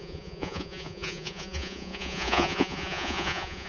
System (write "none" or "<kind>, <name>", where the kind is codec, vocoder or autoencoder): vocoder, Vocos